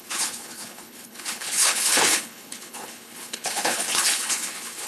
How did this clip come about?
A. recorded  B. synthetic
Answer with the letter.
B